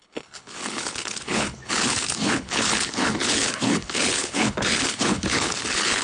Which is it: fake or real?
fake